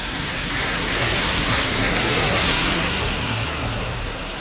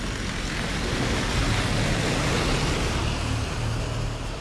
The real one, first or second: second